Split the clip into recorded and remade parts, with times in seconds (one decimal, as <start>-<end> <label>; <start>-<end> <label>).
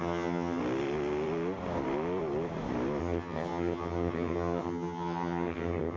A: 0.0-0.6 remade; 0.6-3.0 recorded; 3.0-6.0 remade